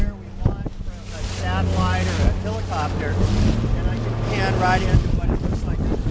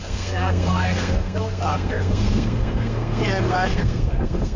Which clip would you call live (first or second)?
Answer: first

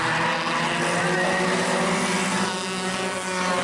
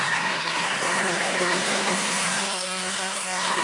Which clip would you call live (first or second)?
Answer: first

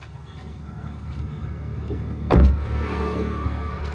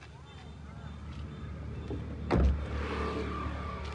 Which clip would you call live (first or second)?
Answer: second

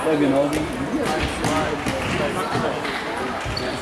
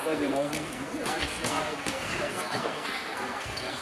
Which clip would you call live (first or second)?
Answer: first